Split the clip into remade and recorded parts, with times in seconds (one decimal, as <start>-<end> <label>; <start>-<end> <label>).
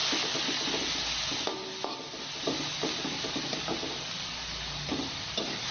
0.0-4.9 recorded; 4.9-5.7 remade